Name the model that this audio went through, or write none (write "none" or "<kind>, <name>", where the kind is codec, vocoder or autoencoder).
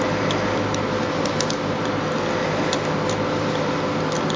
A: none